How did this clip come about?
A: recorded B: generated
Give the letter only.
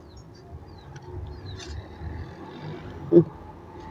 A